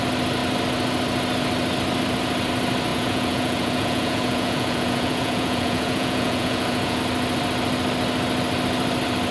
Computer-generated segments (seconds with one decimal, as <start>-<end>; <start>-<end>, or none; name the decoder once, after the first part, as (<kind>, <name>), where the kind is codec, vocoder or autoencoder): 2.9-7.0 (vocoder, Vocos)